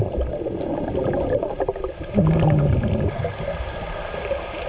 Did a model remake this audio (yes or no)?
no